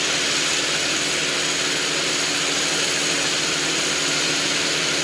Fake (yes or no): no